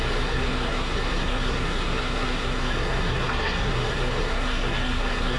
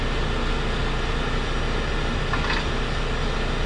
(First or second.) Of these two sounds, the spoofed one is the first